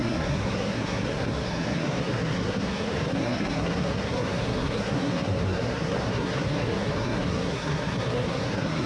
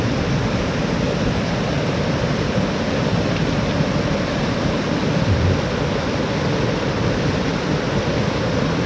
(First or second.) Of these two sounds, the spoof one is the first